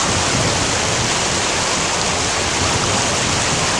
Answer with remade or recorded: recorded